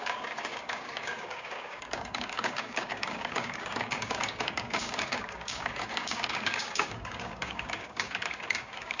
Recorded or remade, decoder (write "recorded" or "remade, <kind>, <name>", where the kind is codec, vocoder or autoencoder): remade, codec, DAC